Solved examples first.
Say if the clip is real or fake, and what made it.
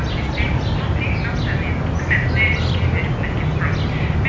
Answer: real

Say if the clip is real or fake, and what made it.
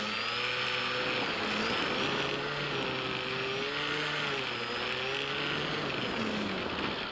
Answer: real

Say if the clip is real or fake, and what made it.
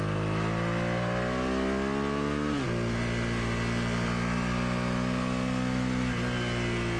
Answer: real